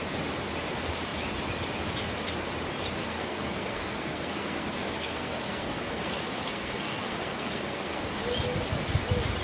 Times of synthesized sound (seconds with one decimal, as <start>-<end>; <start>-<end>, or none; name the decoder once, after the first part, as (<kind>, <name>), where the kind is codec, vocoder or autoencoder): 3.0-8.0 (codec, SNAC)